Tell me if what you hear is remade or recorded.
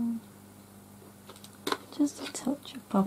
recorded